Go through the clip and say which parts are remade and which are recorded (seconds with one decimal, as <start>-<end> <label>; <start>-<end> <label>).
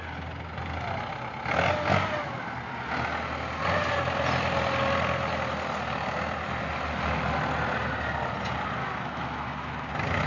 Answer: 0.0-8.8 recorded; 8.8-9.9 remade; 9.9-10.3 recorded